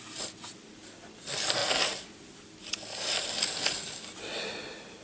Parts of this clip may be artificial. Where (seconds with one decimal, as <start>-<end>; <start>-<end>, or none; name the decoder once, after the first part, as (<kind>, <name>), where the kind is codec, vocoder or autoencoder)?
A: none

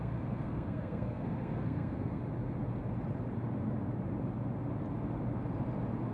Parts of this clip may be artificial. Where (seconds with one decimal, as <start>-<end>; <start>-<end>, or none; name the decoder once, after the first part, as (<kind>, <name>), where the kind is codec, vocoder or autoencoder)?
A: 0.0-2.2 (codec, SNAC)